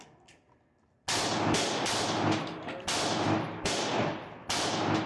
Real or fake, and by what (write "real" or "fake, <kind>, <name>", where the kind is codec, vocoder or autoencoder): real